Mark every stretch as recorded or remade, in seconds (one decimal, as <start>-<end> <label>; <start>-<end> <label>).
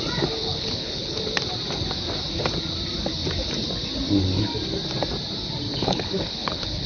0.0-0.4 recorded; 0.4-1.2 remade; 1.2-5.7 recorded; 5.7-6.9 remade